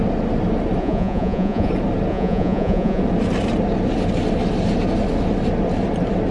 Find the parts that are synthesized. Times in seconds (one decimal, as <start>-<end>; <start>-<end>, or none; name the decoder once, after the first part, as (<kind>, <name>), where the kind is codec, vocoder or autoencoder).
0.8-1.7 (vocoder, Vocos); 2.1-3.0